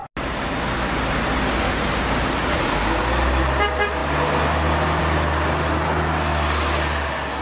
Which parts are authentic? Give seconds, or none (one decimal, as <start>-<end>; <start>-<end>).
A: 0.0-7.4